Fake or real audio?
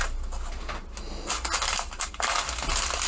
real